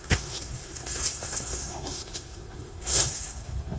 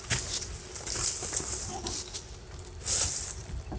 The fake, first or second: first